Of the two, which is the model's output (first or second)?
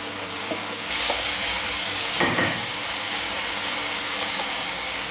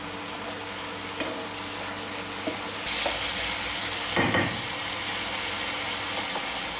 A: first